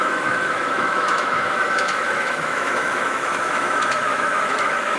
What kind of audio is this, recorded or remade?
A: remade